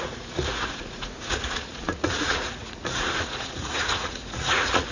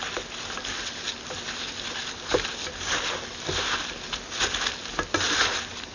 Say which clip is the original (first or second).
second